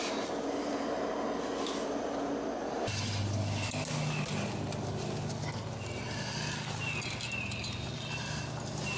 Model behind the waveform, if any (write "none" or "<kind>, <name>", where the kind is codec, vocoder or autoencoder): none